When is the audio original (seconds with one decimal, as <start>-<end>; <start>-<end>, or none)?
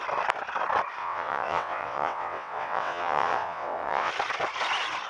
0.0-1.0; 4.1-5.1